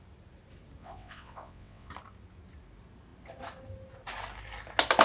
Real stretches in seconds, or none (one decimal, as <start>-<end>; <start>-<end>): 0.0-0.8; 1.9-5.0